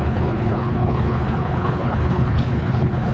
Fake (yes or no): yes